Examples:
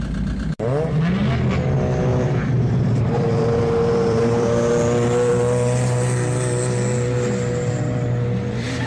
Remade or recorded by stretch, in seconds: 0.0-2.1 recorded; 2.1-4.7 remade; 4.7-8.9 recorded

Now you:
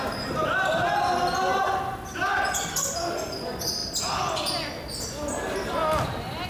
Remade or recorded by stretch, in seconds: 0.0-6.5 recorded